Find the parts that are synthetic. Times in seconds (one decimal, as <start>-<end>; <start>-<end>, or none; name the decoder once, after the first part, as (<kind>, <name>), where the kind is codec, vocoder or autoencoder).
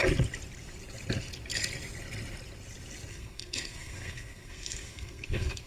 3.1-5.7 (codec, SNAC)